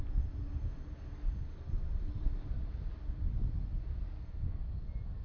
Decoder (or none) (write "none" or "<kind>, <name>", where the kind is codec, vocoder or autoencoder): none